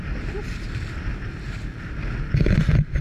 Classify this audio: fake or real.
real